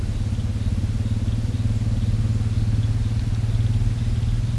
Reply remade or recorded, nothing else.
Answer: recorded